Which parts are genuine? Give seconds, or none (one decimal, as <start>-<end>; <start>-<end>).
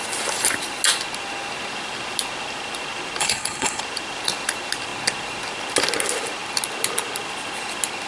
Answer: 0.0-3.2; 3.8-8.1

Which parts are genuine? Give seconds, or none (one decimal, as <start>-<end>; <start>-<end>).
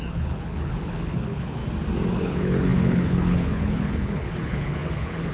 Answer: 1.6-2.1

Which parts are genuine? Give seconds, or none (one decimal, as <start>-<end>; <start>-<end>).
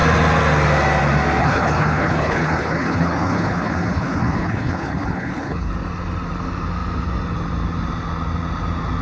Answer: 0.0-1.4; 5.7-9.0